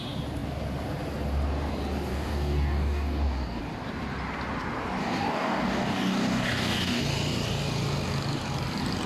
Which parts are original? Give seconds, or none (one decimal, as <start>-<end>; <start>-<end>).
0.0-2.1; 3.6-5.0; 7.0-9.1